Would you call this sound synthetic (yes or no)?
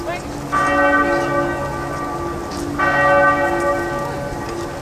no